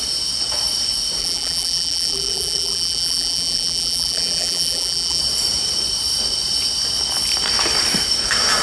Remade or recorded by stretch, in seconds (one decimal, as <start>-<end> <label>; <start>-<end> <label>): 0.0-1.2 recorded; 1.2-5.2 remade; 5.2-8.6 recorded

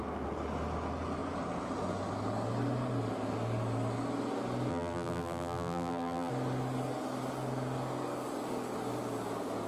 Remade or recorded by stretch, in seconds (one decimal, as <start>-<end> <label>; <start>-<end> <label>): 0.0-4.7 recorded; 4.7-6.3 remade; 6.3-9.7 recorded

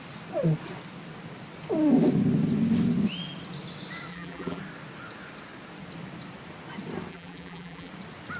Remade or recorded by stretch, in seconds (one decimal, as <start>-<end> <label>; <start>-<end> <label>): 0.0-4.1 recorded; 4.1-4.6 remade; 4.6-7.1 recorded; 7.1-7.9 remade; 7.9-8.4 recorded